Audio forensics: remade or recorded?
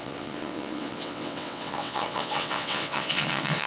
remade